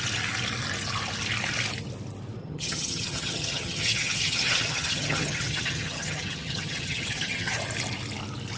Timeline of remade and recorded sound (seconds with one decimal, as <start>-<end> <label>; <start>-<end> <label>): 0.0-2.4 recorded; 2.4-7.6 remade; 7.6-8.6 recorded